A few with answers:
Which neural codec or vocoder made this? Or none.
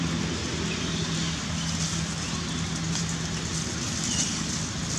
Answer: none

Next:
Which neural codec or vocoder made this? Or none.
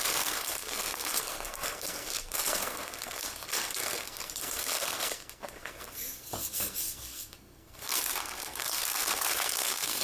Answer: codec, SNAC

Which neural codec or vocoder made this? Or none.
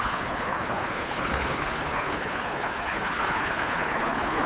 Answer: codec, HILCodec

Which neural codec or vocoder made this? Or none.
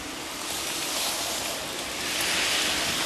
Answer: none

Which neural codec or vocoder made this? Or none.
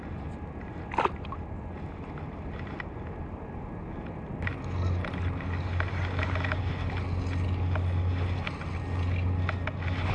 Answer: none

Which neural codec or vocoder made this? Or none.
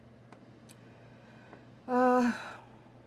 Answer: none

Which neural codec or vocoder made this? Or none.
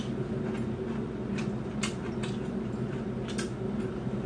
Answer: none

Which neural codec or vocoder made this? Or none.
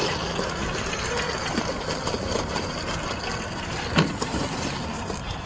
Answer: none